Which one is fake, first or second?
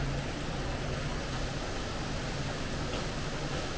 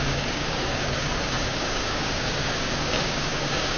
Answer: second